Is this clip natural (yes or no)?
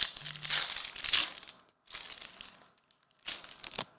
yes